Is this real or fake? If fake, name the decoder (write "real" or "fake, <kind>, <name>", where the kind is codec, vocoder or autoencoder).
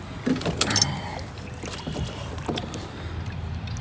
real